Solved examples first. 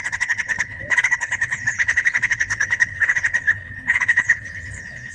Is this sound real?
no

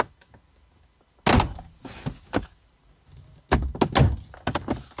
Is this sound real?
yes